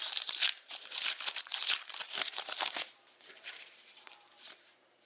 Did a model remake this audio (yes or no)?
yes